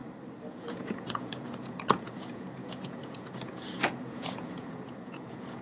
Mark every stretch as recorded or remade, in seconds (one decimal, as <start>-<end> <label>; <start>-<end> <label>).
0.0-0.5 recorded; 0.5-5.6 remade

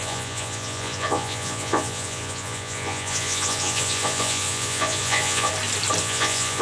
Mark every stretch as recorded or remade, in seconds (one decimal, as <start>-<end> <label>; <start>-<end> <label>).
0.0-5.5 remade; 5.5-6.0 recorded; 6.0-6.6 remade

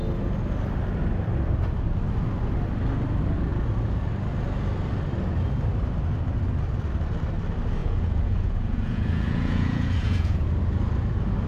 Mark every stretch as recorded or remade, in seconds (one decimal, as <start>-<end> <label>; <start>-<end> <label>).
0.0-7.8 recorded; 7.8-10.5 remade; 10.5-11.5 recorded

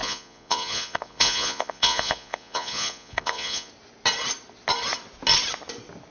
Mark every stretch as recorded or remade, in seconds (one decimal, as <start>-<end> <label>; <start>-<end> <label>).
0.0-3.7 remade; 3.7-6.1 recorded